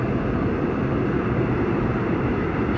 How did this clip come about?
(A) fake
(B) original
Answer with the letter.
B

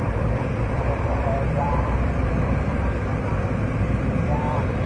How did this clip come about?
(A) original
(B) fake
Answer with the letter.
B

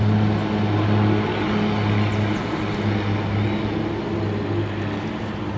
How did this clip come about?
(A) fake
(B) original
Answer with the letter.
B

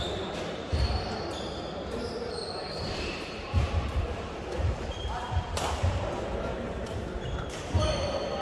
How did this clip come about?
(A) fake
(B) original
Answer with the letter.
A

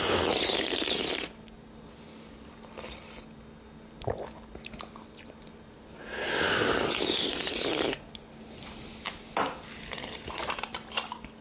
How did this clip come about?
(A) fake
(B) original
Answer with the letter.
B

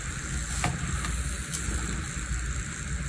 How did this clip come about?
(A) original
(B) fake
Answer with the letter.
A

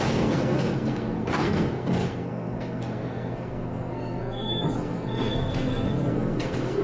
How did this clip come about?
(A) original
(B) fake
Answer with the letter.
B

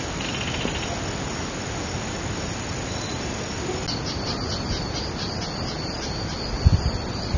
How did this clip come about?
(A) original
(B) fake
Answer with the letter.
A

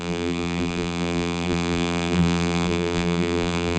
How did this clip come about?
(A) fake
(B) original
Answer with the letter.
A